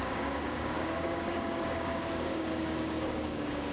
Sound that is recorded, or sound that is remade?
remade